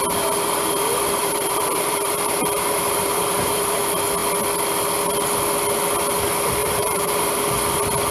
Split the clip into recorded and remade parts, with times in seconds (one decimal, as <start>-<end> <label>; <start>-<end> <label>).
0.0-1.2 recorded; 1.2-3.8 remade; 3.8-6.6 recorded; 6.6-7.4 remade; 7.4-8.1 recorded